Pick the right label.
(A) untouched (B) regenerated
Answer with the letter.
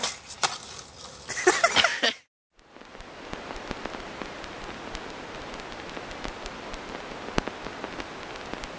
A